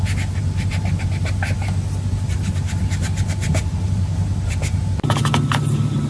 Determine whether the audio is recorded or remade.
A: recorded